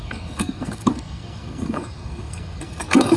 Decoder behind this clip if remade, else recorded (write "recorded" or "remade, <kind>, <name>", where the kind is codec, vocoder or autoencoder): remade, codec, SNAC